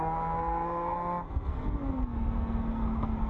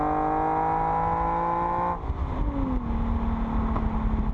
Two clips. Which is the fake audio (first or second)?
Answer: first